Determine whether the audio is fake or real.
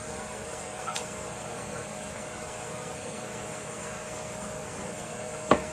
fake